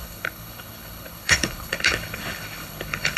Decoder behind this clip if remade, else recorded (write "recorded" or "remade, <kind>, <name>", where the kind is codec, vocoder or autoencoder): remade, codec, HILCodec